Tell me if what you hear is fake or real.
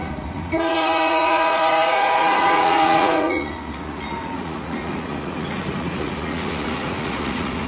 fake